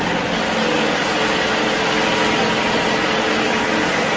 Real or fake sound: real